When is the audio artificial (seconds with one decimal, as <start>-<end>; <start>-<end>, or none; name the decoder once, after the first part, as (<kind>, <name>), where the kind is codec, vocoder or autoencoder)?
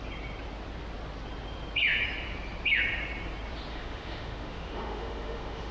3.7-5.7 (autoencoder, DAC-VAE)